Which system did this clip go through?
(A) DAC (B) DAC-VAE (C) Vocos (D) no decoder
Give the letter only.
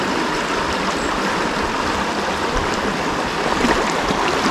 D